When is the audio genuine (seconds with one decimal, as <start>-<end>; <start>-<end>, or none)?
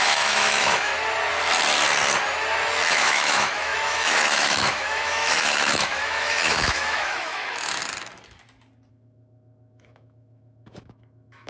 0.9-2.9; 7.8-8.9